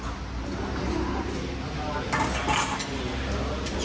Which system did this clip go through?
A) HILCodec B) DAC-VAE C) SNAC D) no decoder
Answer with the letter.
D